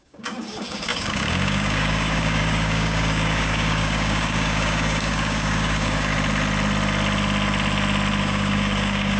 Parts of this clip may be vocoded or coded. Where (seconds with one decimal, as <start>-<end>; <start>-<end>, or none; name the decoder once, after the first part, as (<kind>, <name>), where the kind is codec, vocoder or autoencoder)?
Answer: 0.0-6.1 (codec, DAC); 8.2-9.2